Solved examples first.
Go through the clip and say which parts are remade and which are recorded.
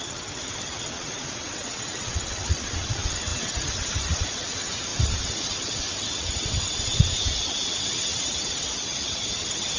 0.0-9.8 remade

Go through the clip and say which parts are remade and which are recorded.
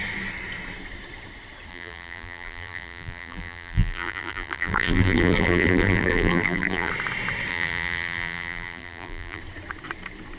0.0-1.7 recorded; 1.7-6.9 remade; 6.9-7.5 recorded; 7.5-9.4 remade; 9.4-10.4 recorded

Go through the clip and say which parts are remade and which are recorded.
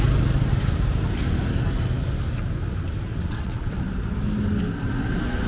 0.0-3.1 recorded; 3.1-3.8 remade; 3.8-5.5 recorded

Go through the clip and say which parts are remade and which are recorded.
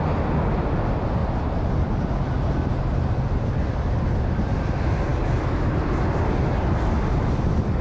0.0-1.2 recorded; 1.2-2.0 remade; 2.0-7.8 recorded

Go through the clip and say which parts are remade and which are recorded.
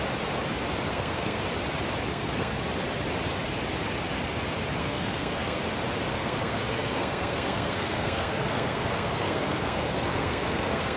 0.0-0.9 recorded; 0.9-1.4 remade; 1.4-2.1 recorded; 2.1-2.6 remade; 2.6-4.8 recorded; 4.8-5.6 remade; 5.6-6.1 recorded; 6.1-11.0 remade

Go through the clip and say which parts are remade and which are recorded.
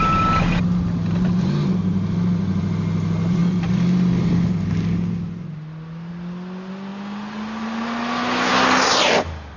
0.0-9.6 recorded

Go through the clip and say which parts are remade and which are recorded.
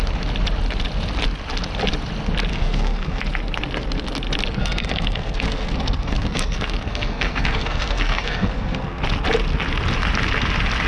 0.0-2.5 recorded; 2.5-3.2 remade; 3.2-4.6 recorded; 4.6-9.0 remade; 9.0-10.9 recorded